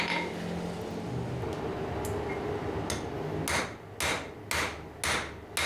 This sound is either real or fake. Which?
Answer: real